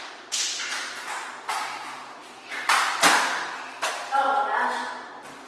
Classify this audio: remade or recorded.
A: recorded